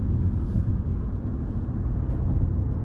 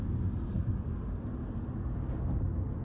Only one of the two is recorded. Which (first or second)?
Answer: second